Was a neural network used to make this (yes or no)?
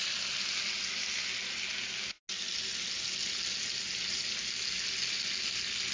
no